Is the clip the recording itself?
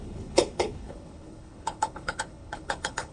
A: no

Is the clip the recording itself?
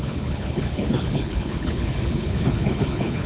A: no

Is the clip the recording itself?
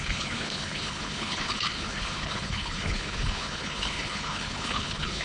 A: no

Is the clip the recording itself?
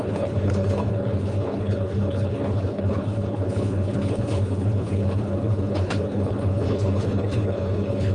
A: no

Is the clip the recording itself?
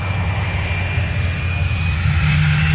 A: yes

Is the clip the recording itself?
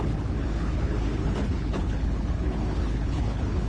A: no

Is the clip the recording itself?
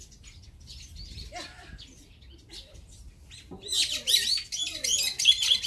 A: yes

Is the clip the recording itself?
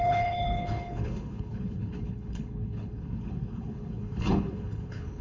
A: no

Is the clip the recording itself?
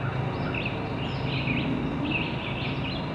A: yes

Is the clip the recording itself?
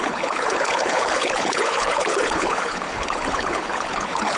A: no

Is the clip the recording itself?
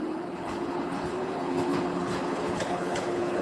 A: no